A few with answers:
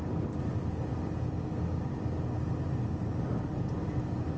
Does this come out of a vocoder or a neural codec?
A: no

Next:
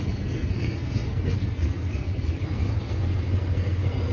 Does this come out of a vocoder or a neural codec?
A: yes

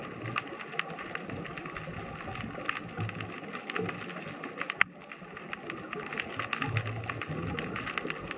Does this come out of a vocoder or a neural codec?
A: no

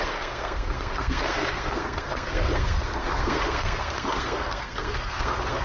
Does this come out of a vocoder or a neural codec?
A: yes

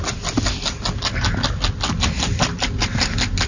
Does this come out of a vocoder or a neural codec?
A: no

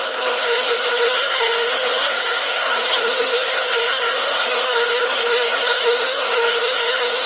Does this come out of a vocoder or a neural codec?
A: yes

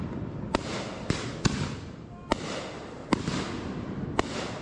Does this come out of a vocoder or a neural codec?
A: no